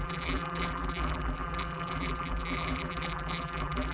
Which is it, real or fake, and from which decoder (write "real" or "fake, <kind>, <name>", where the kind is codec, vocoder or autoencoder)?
fake, vocoder, BigVGAN v2